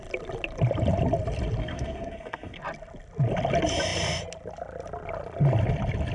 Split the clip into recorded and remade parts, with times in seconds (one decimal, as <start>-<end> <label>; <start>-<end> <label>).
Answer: 0.0-1.6 recorded; 1.6-2.6 remade; 2.6-6.1 recorded